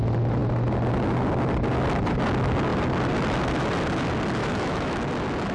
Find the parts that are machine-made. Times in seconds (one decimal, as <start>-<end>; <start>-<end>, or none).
4.4-5.1

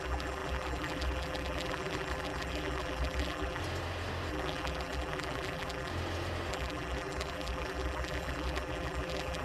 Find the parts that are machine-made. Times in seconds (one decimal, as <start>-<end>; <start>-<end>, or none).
0.0-3.6; 4.3-5.9; 6.5-9.4

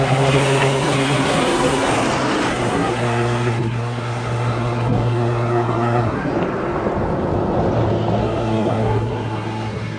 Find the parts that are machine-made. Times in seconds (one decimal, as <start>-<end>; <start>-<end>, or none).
0.0-1.9; 2.5-6.3; 8.2-10.0

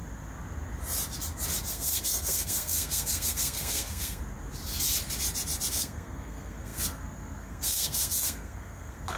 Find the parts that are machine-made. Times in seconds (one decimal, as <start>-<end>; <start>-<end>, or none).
1.7-4.2; 5.7-9.2